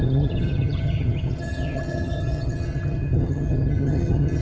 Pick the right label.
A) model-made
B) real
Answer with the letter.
A